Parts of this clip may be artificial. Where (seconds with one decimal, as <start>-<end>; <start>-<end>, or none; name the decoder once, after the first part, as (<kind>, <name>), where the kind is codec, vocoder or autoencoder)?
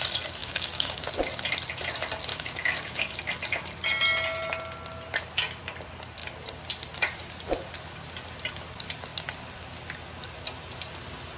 0.4-1.1 (codec, DAC); 2.3-3.2